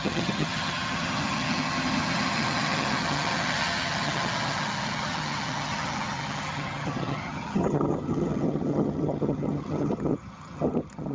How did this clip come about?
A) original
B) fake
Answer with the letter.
B